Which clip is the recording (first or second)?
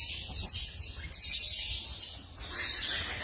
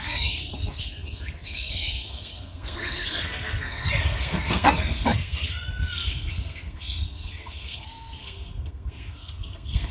first